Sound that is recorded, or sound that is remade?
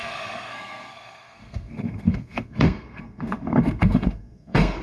remade